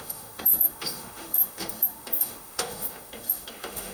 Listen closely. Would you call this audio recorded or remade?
remade